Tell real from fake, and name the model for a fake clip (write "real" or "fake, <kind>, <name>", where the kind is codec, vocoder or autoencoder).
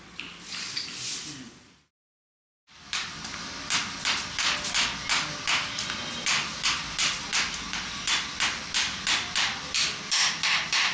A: fake, vocoder, BigVGAN v2